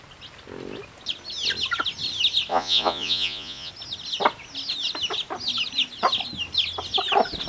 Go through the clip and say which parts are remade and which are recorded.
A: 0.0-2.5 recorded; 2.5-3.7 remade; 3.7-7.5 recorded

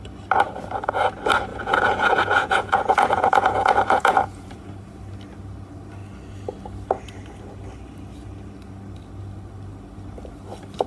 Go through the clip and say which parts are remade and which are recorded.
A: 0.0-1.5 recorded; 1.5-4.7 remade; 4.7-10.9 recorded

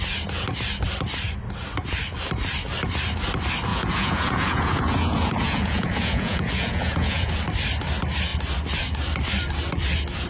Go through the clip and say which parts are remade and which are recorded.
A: 0.0-3.7 recorded; 3.7-7.3 remade; 7.3-10.3 recorded

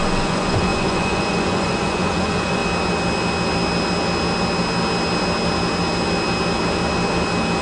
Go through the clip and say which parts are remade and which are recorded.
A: 0.0-2.6 remade; 2.6-7.6 recorded

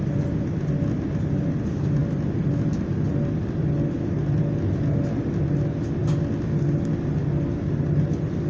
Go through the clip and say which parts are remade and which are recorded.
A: 0.0-8.5 recorded